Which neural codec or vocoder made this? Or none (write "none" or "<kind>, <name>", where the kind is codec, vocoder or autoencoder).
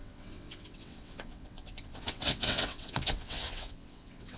vocoder, WaveNeXt